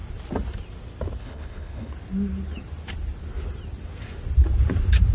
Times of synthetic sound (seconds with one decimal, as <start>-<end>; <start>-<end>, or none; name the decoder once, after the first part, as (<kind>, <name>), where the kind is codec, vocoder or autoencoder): 1.2-1.9 (codec, HILCodec)